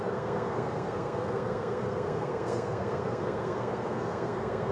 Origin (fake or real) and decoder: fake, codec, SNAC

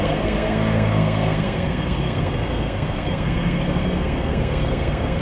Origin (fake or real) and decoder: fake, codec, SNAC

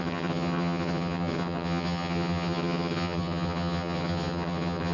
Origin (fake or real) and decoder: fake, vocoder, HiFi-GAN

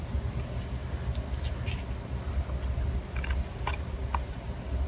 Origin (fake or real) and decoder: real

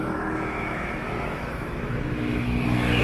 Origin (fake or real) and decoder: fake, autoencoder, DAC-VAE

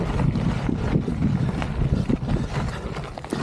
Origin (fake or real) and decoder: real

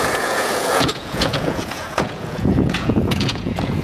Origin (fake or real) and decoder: fake, vocoder, Vocos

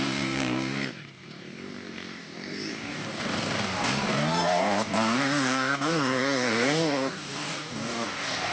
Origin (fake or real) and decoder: fake, codec, DAC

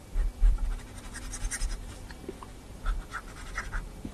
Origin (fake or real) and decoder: fake, vocoder, BigVGAN v2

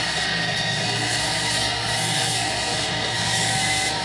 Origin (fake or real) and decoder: fake, codec, SNAC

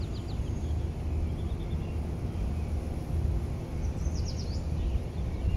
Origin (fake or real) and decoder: real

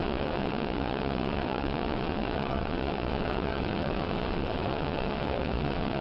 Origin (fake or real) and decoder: fake, vocoder, WaveNeXt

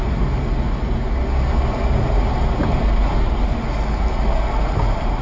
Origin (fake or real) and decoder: real